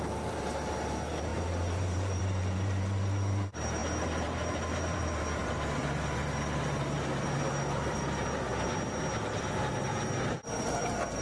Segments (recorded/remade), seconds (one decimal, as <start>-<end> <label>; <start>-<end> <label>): 0.0-8.5 remade; 8.5-10.3 recorded; 10.3-11.2 remade